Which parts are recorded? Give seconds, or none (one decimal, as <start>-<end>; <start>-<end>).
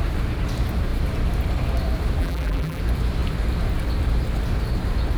0.0-2.2; 2.8-5.2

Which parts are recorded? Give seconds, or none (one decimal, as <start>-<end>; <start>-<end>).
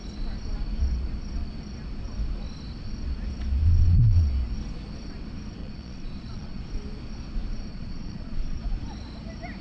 0.0-5.6; 6.6-7.7; 8.6-9.6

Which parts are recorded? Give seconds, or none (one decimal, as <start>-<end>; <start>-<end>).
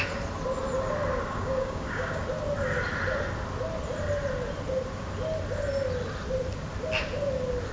0.0-1.3; 2.2-7.7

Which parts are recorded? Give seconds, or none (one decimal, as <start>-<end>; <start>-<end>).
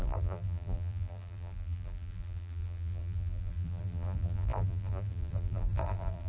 none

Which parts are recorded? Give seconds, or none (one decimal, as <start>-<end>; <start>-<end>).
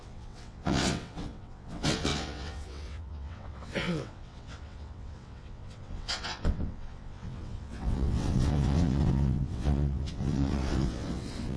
none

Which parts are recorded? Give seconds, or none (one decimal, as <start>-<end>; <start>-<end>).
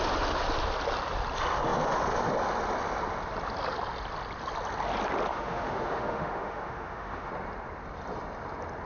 0.0-5.3; 7.3-8.9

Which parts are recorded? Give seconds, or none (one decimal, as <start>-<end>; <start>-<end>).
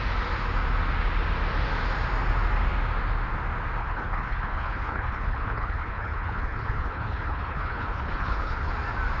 0.0-3.8; 8.7-9.2